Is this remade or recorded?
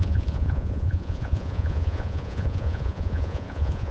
remade